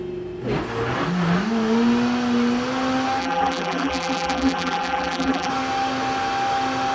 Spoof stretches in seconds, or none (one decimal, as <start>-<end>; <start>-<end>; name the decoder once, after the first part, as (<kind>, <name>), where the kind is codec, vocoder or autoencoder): 3.2-5.5 (vocoder, BigVGAN v2)